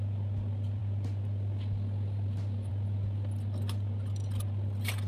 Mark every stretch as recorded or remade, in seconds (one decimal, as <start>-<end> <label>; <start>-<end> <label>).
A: 0.0-5.1 recorded